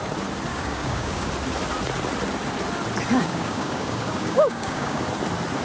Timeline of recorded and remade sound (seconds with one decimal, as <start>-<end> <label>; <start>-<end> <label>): 0.0-0.5 recorded; 0.5-1.3 remade; 1.3-3.2 recorded; 3.2-5.0 remade; 5.0-5.6 recorded